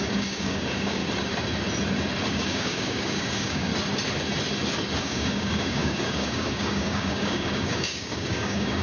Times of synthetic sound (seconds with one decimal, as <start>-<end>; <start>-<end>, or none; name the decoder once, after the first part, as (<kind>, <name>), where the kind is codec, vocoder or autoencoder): 0.0-1.0 (codec, DAC); 2.3-3.7; 5.0-8.8